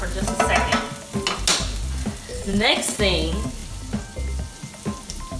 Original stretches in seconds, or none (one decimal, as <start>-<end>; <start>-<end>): 0.0-2.3; 3.0-5.4